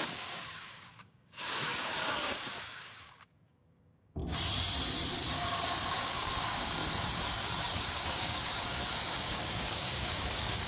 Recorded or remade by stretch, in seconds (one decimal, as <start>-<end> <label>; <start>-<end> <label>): 0.0-4.2 remade; 4.2-5.3 recorded; 5.3-6.8 remade; 6.8-7.8 recorded; 7.8-10.7 remade